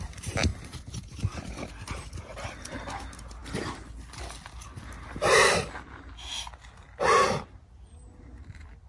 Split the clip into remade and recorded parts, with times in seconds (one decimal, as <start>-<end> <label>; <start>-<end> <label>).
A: 0.0-0.5 recorded; 0.5-1.7 remade; 1.7-8.9 recorded